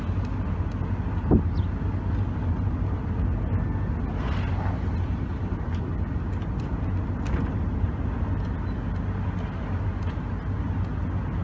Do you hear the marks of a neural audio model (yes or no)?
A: no